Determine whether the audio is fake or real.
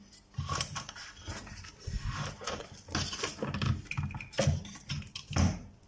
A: real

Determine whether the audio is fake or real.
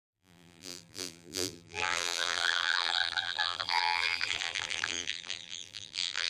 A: fake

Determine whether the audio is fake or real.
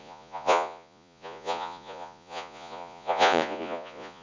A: fake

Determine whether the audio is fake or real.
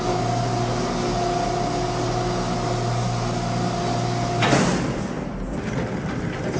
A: real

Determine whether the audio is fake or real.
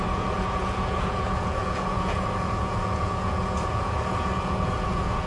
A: fake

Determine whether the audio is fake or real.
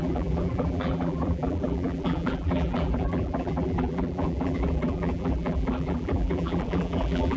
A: fake